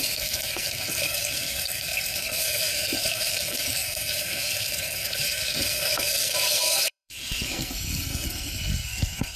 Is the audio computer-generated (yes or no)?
yes